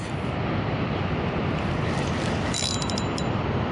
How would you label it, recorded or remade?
recorded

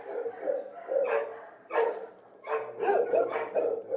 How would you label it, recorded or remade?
recorded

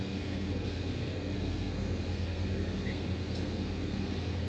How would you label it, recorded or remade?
remade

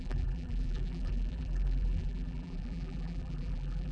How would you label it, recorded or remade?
remade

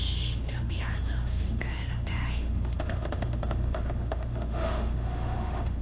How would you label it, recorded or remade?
remade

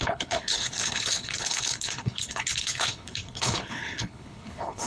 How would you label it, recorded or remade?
remade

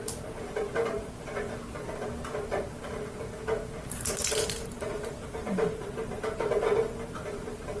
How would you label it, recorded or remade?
remade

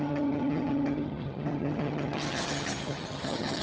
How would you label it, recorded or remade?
remade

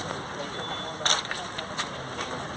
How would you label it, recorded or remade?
recorded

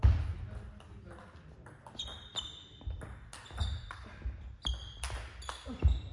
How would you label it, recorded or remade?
recorded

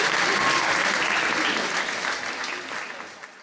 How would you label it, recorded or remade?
recorded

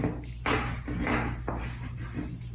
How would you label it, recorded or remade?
recorded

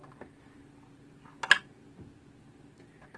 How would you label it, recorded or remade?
recorded